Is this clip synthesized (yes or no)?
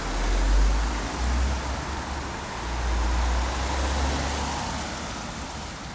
no